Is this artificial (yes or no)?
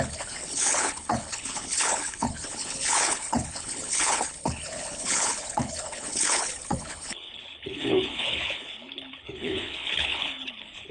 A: yes